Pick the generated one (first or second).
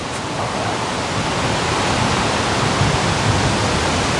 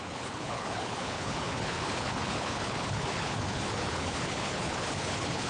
second